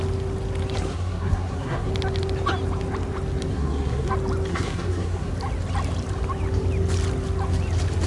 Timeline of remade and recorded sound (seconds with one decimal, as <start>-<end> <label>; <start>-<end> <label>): 0.0-0.9 recorded; 0.9-1.9 remade; 1.9-3.5 recorded; 3.5-4.1 remade; 4.1-4.5 recorded; 4.5-5.3 remade; 5.3-8.1 recorded